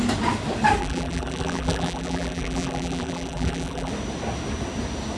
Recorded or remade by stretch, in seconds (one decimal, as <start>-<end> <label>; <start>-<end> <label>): 0.0-0.8 recorded; 0.8-3.9 remade; 3.9-5.2 recorded

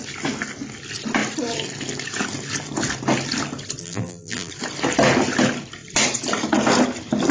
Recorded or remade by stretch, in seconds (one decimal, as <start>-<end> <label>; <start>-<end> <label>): 0.0-3.8 recorded; 3.8-4.5 remade; 4.5-7.3 recorded